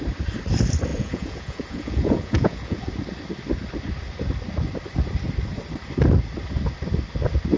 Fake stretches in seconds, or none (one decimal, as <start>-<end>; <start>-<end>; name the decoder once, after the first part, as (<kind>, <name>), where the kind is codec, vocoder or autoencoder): 0.9-2.8 (vocoder, Vocos)